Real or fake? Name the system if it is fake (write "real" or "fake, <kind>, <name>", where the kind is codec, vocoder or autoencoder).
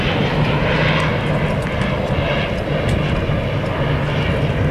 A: real